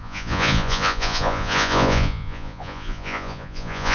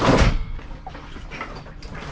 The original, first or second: second